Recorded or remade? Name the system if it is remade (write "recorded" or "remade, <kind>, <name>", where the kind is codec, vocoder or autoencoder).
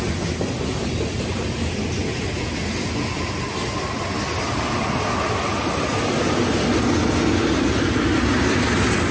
recorded